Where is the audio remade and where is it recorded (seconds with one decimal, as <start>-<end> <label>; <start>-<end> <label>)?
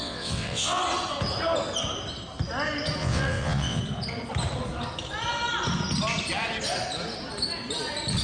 0.0-0.8 remade; 0.8-3.0 recorded; 3.0-3.8 remade; 3.8-8.2 recorded